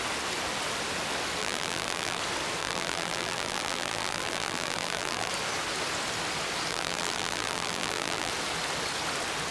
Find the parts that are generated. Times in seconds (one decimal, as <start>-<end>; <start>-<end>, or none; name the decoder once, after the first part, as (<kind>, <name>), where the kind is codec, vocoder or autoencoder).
1.4-2.2 (vocoder, BigVGAN v2); 2.6-5.3; 6.7-8.3